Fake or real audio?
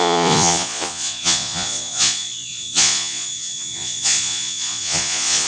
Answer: fake